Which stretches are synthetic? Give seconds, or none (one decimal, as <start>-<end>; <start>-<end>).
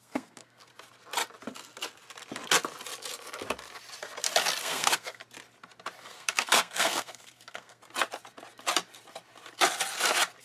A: 0.0-0.7; 4.6-5.2; 6.0-7.8